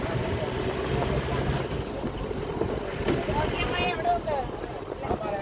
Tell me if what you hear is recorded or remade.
recorded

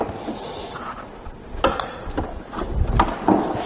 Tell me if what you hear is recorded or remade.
recorded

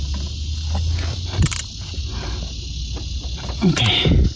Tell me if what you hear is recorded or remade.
recorded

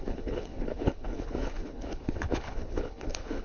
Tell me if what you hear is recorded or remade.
remade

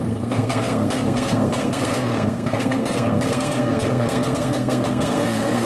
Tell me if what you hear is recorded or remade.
remade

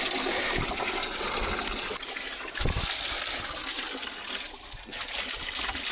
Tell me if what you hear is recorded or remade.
recorded